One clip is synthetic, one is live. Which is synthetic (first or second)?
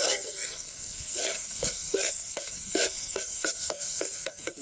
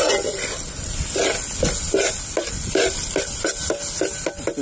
first